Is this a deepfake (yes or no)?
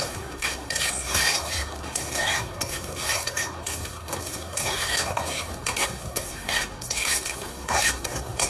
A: yes